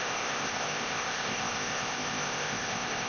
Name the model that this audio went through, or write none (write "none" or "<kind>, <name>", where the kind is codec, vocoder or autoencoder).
codec, ZipCodec